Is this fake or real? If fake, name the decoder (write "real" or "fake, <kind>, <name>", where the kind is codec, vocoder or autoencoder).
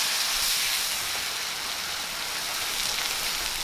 real